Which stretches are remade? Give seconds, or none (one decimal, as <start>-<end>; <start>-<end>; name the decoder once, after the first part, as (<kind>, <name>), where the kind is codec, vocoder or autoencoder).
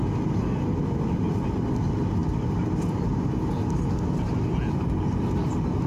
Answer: none